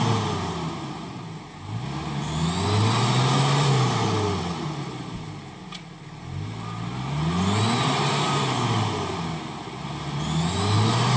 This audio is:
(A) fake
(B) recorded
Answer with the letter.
B